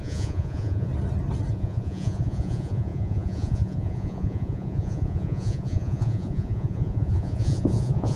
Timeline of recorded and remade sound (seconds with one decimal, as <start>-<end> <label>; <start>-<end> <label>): 0.0-0.9 remade; 0.9-1.5 recorded; 1.5-8.2 remade